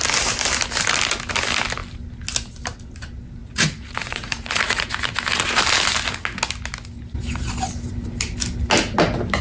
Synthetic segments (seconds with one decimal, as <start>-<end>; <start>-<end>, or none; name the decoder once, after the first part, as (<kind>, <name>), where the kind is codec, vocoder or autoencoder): 3.4-4.9 (vocoder, Vocos)